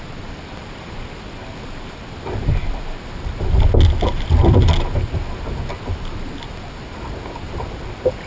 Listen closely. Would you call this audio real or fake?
real